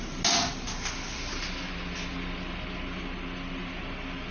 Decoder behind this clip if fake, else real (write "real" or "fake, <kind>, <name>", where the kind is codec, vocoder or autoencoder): real